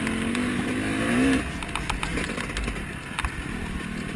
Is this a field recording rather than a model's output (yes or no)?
yes